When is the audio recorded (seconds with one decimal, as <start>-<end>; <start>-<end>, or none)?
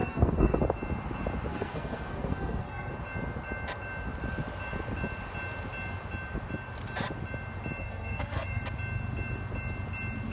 0.6-1.5; 2.9-7.8; 8.6-10.3